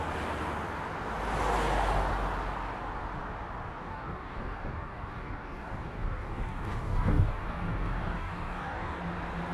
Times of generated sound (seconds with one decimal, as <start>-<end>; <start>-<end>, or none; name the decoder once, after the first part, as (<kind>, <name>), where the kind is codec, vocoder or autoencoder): 3.8-9.0 (codec, DAC)